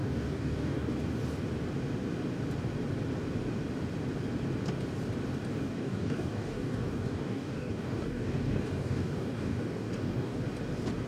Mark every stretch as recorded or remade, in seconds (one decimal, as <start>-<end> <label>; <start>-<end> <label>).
0.0-0.9 remade; 0.9-5.5 recorded; 5.5-10.4 remade; 10.4-11.1 recorded